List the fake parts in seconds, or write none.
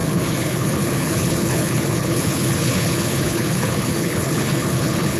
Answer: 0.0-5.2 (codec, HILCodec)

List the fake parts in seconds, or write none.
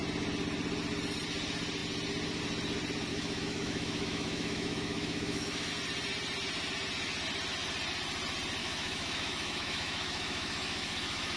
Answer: 3.1-5.7 (autoencoder, DAC-VAE); 8.6-11.4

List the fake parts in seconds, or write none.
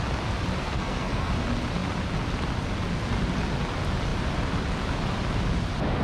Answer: 0.6-1.3 (codec, SNAC)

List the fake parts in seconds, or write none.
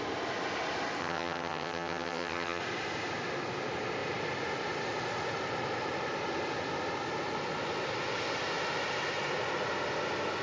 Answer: 1.0-2.6 (vocoder, HiFi-GAN)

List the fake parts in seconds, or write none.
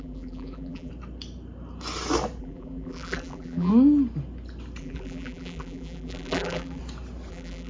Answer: 0.0-0.9 (vocoder, BigVGAN v2); 2.4-3.7; 4.8-6.8; 7.3-7.7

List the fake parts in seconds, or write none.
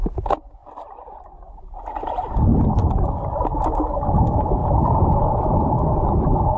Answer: 0.6-3.1 (vocoder, BigVGAN v2); 4.6-6.6